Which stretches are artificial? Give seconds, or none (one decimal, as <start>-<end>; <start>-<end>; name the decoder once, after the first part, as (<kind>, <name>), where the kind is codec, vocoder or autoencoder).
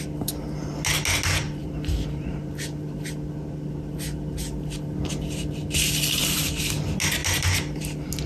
1.6-3.1 (vocoder, BigVGAN v2)